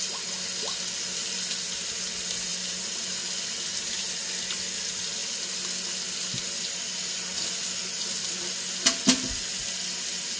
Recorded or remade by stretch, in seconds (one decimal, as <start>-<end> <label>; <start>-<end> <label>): 0.0-10.4 recorded